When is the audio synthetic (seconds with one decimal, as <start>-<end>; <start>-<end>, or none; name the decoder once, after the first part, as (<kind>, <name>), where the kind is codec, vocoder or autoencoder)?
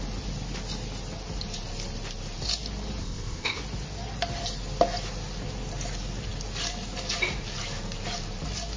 3.0-3.6 (codec, ZipCodec)